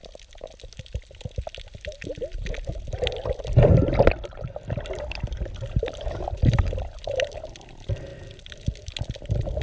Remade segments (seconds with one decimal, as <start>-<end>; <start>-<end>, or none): none

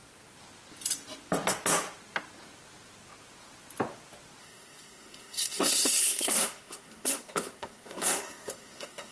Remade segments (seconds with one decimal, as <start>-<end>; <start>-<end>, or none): 4.4-9.1

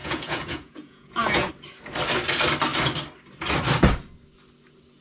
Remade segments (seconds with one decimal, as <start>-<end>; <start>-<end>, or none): 0.0-1.5

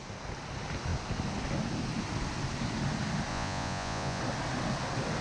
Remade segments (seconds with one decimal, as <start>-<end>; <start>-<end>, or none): 3.3-4.2

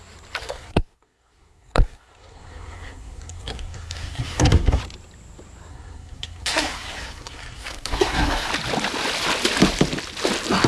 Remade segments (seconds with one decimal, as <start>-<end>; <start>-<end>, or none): 0.4-4.8; 5.7-8.5

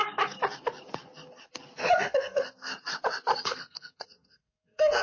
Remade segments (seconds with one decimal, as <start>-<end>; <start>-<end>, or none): 2.0-2.7; 3.4-5.0

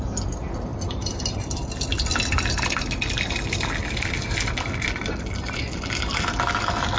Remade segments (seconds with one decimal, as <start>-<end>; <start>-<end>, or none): none

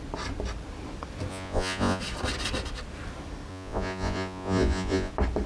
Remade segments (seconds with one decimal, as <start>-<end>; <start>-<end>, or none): 1.3-2.0; 3.5-5.1